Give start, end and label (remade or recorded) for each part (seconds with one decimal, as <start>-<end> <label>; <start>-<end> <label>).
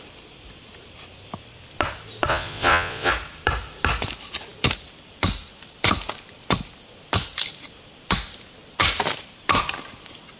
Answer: 0.0-2.3 recorded; 2.3-3.1 remade; 3.1-10.4 recorded